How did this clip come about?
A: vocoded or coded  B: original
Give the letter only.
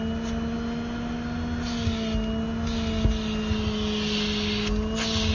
B